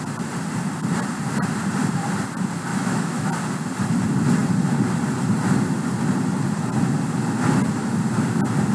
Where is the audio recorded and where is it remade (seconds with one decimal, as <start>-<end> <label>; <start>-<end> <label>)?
0.0-2.7 recorded; 2.7-3.3 remade; 3.3-8.7 recorded